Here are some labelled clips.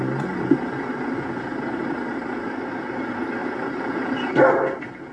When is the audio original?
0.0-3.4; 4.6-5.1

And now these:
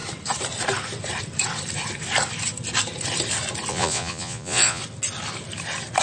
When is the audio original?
0.0-3.7; 4.8-6.0